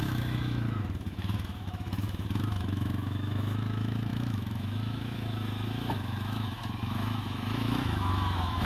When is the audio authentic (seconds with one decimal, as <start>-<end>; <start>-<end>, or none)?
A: none